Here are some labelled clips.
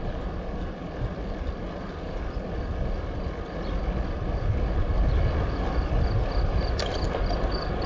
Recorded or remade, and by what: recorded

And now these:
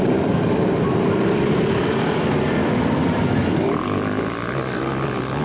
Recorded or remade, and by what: remade, vocoder, BigVGAN v2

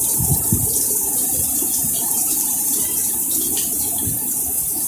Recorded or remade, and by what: remade, vocoder, BigVGAN v2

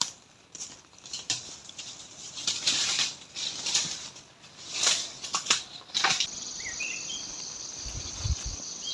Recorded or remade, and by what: remade, vocoder, BigVGAN v2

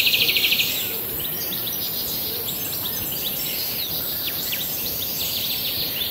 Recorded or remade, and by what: remade, vocoder, BigVGAN v2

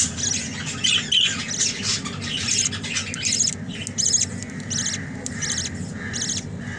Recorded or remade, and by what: recorded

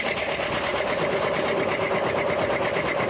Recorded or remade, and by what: recorded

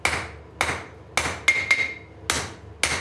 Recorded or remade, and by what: recorded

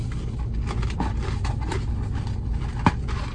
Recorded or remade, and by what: recorded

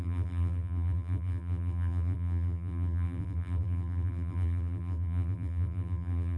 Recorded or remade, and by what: remade, vocoder, BigVGAN v2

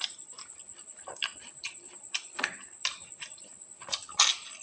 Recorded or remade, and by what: remade, vocoder, BigVGAN v2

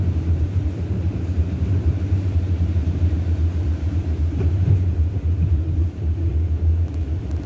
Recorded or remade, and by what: remade, vocoder, BigVGAN v2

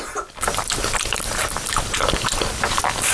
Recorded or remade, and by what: recorded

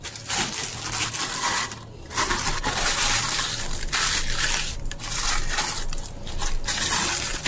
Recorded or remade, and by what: recorded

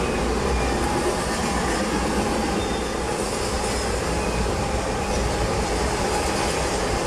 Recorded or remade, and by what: recorded